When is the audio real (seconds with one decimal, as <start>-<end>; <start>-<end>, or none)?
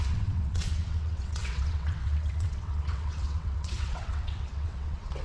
none